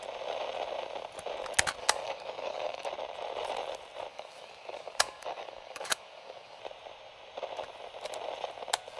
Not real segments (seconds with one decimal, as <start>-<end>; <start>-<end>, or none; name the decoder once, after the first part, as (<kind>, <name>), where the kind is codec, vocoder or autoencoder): 1.8-2.9 (codec, DAC); 4.1-6.6